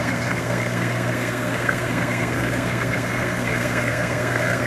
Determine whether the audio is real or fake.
fake